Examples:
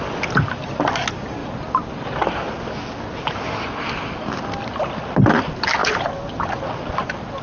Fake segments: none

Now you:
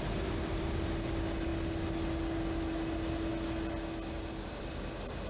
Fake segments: none